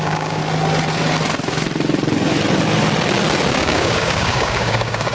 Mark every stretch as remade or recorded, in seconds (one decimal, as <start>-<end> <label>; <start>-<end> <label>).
0.0-0.4 remade; 0.4-3.5 recorded; 3.5-5.1 remade

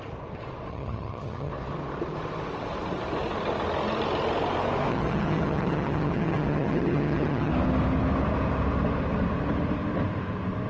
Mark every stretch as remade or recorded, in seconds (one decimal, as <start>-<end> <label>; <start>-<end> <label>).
0.0-0.7 recorded; 0.7-1.5 remade; 1.5-4.9 recorded; 4.9-7.5 remade; 7.5-10.7 recorded

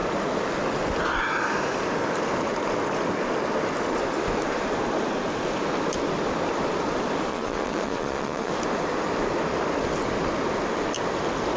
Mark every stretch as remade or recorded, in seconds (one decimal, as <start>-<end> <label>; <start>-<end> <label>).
0.0-7.3 recorded; 7.3-8.5 remade; 8.5-11.6 recorded

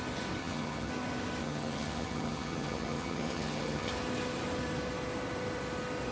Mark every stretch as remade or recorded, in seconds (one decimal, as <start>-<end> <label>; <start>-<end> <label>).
0.0-0.4 recorded; 0.4-0.9 remade; 0.9-1.4 recorded; 1.4-3.9 remade; 3.9-6.1 recorded

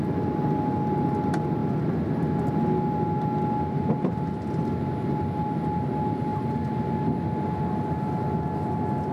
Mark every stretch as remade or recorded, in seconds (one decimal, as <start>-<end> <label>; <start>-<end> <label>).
0.0-9.1 recorded

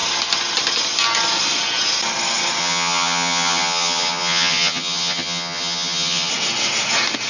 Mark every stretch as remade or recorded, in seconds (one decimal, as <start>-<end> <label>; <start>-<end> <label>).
0.0-2.6 recorded; 2.6-6.3 remade; 6.3-7.3 recorded